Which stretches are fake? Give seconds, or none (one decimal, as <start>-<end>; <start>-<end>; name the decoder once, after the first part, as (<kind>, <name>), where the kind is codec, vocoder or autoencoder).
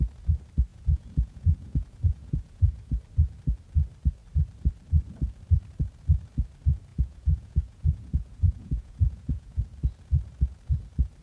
0.7-3.0 (vocoder, Vocos); 6.9-9.6